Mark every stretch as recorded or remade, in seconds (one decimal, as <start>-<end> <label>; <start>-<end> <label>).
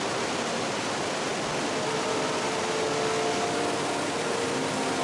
0.0-5.0 recorded